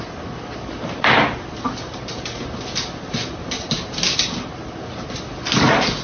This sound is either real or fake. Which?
real